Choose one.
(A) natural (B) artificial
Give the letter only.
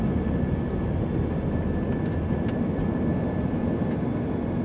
A